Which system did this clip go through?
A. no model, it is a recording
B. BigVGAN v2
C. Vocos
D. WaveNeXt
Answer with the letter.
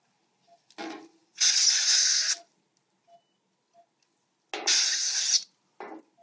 A